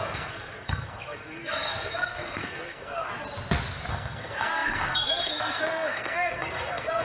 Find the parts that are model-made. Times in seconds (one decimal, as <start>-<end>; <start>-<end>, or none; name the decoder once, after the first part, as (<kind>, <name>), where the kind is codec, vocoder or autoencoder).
0.0-3.1 (codec, SNAC); 3.9-7.0